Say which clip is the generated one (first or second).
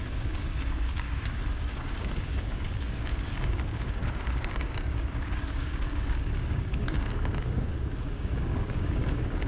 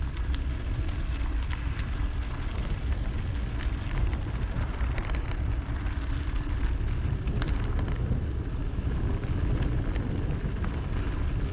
first